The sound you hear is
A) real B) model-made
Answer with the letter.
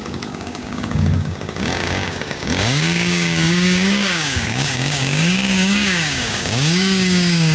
B